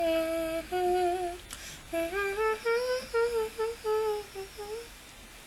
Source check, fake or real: real